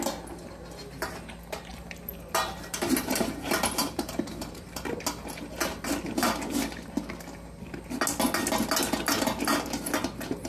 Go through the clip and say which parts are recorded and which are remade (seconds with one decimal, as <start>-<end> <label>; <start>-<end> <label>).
0.0-1.7 recorded; 1.7-4.9 remade; 4.9-10.5 recorded